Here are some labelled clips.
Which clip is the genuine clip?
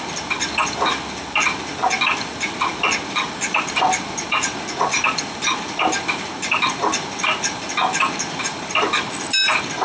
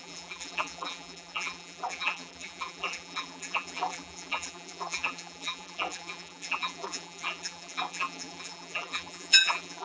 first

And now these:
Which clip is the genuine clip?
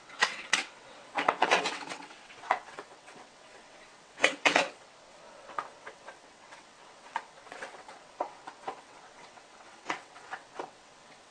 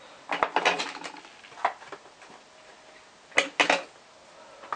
second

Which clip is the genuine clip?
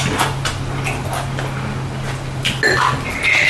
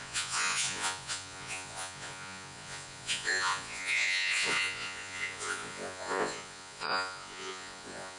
first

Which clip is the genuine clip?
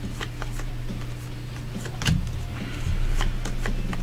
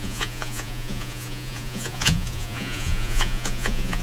first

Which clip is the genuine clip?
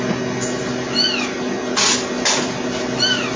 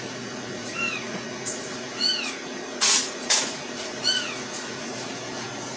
first